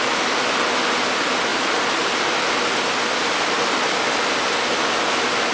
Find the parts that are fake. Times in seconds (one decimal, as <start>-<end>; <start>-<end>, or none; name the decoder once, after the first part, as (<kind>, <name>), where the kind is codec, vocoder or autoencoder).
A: none